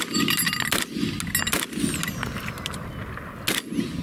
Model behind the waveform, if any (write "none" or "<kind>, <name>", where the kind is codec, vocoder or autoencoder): none